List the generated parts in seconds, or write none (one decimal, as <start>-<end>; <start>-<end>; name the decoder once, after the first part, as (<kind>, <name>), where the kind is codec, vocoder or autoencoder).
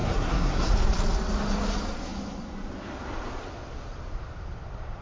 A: 0.0-0.7 (codec, SNAC)